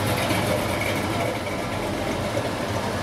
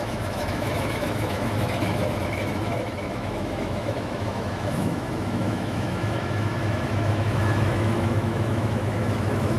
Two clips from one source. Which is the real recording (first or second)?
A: first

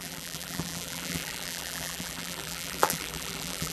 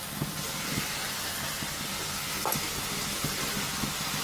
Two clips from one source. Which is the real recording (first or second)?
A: second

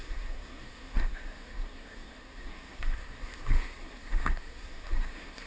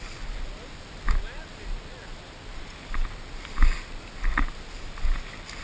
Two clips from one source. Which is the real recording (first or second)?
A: second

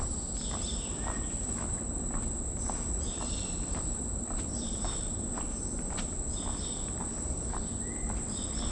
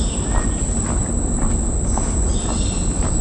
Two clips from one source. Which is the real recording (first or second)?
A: second